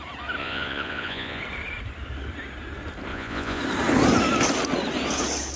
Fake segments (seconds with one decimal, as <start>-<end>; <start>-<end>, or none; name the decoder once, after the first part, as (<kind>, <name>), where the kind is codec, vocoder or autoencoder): 0.4-1.4 (vocoder, Vocos); 3.1-3.6